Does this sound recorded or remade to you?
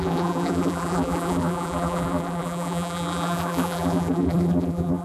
remade